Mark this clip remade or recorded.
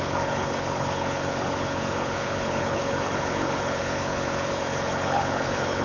remade